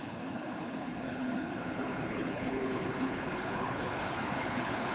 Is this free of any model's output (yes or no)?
no